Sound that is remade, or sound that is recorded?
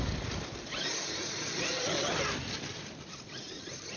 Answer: recorded